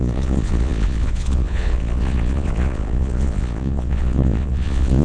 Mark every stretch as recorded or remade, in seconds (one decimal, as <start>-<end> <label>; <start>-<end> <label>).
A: 0.0-5.0 remade